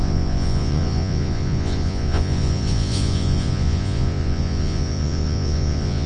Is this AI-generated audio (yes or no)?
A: yes